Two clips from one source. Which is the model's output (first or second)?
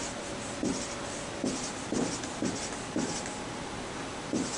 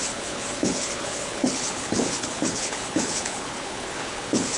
second